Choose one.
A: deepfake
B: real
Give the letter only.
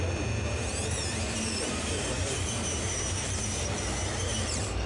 A